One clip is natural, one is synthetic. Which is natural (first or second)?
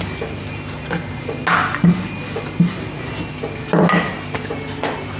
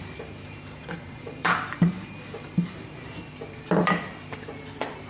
first